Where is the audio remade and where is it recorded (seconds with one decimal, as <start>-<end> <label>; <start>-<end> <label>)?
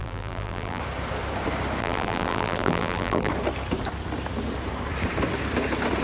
0.0-0.8 remade; 0.8-1.8 recorded; 1.8-3.3 remade; 3.3-6.0 recorded